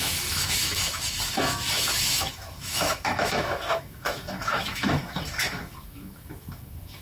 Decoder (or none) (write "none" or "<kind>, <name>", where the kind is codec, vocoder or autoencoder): autoencoder, DAC-VAE